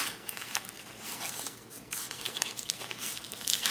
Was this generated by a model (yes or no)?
yes